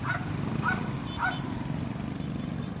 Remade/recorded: recorded